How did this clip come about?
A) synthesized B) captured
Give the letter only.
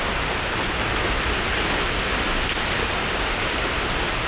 B